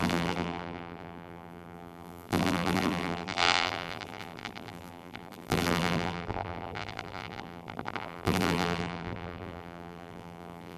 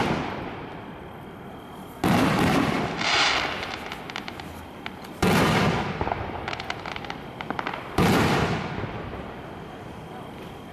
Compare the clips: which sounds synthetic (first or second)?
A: first